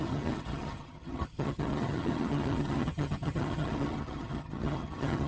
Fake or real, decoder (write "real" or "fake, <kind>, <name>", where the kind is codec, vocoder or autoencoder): fake, vocoder, HiFi-GAN